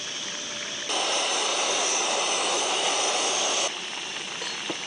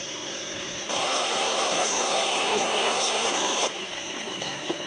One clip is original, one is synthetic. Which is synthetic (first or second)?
second